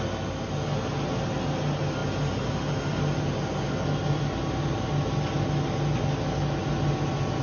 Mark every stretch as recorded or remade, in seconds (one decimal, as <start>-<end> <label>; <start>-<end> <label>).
0.0-7.4 recorded